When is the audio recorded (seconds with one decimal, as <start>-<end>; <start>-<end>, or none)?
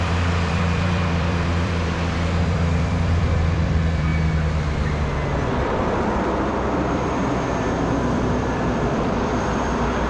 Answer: 4.1-5.5